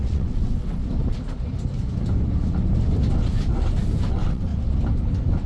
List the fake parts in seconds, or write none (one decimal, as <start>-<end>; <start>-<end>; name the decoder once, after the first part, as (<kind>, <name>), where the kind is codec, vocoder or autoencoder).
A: 0.0-0.8 (vocoder, WaveNeXt); 4.1-4.5